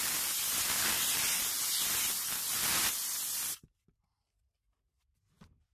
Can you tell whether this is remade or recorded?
recorded